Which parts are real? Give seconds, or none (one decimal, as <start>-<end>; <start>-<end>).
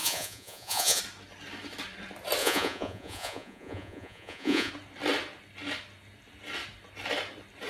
1.0-2.4; 4.7-7.7